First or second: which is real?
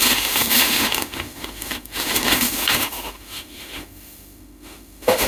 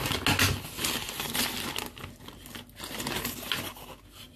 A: second